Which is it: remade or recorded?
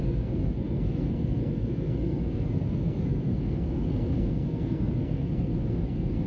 remade